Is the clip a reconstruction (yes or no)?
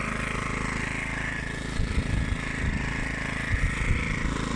no